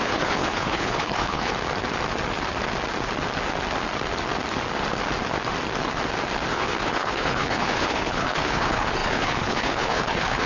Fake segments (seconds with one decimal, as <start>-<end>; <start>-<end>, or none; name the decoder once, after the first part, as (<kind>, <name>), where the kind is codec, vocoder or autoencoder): 0.0-1.5 (codec, HILCodec); 6.5-10.5